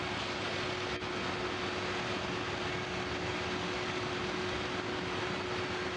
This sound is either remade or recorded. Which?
recorded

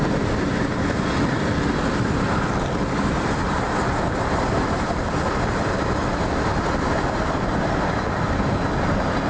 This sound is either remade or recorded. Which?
recorded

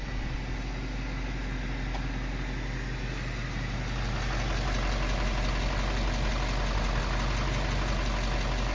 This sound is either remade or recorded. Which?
recorded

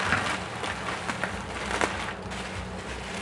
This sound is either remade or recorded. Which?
recorded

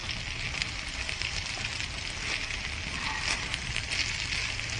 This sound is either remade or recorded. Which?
recorded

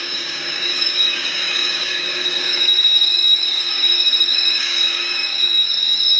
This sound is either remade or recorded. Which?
remade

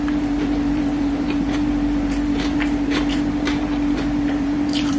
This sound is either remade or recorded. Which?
remade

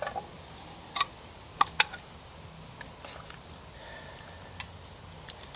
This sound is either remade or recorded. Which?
recorded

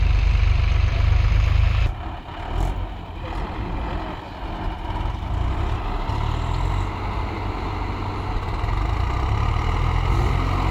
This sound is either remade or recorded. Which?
recorded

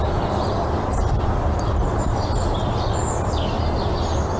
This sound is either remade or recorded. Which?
recorded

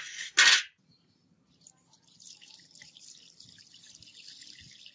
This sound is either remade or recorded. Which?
recorded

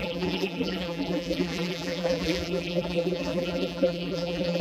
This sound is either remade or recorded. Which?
remade